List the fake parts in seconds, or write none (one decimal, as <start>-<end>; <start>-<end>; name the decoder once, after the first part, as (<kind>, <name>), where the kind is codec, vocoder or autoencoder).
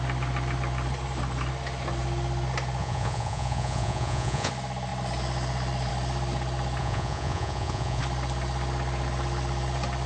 2.8-4.5 (vocoder, Vocos); 6.8-8.0